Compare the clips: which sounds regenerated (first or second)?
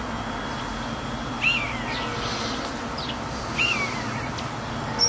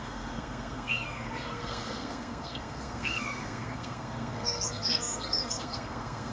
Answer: second